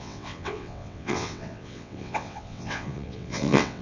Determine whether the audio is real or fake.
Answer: fake